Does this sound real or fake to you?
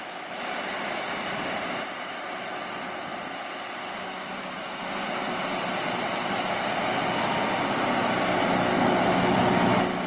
real